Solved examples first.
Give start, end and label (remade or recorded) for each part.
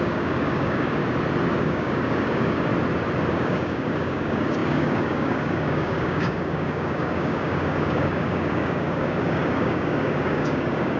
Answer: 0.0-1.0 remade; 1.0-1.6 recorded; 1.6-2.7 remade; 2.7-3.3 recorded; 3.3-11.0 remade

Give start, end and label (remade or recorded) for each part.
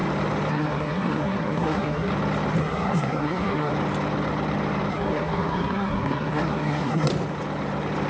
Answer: 0.0-0.5 recorded; 0.5-2.1 remade; 2.1-2.6 recorded; 2.6-3.7 remade; 3.7-4.9 recorded; 4.9-7.1 remade; 7.1-8.1 recorded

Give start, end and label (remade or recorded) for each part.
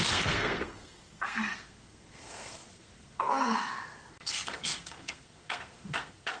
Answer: 0.0-6.4 remade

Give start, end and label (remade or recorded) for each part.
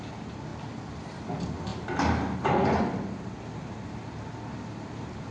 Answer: 0.0-5.3 recorded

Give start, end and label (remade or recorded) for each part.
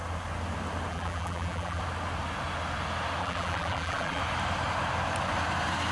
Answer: 0.0-0.9 recorded; 0.9-1.8 remade; 1.8-3.2 recorded; 3.2-4.2 remade; 4.2-5.9 recorded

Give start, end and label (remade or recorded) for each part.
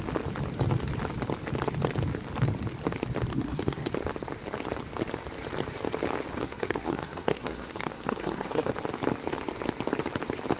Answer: 0.0-3.3 recorded; 3.3-3.9 remade; 3.9-6.3 recorded; 6.3-8.7 remade; 8.7-10.6 recorded